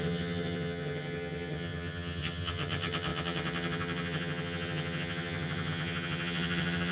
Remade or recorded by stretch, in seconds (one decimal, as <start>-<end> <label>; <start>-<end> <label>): 0.0-6.9 remade